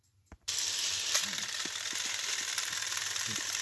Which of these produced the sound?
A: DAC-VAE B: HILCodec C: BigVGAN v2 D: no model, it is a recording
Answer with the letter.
C